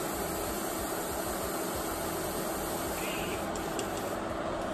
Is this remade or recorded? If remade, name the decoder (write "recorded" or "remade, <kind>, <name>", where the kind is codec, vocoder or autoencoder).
recorded